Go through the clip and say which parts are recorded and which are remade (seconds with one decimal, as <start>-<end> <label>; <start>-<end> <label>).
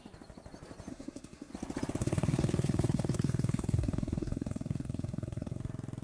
0.0-0.9 recorded; 0.9-1.5 remade; 1.5-2.0 recorded; 2.0-5.6 remade; 5.6-6.0 recorded